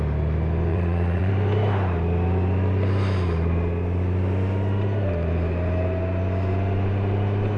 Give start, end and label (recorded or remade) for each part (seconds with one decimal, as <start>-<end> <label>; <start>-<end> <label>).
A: 0.0-0.7 recorded; 0.7-1.3 remade; 1.3-7.6 recorded